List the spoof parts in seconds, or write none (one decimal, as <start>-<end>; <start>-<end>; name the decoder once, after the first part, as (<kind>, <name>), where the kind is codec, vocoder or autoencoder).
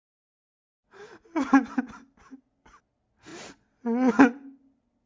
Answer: none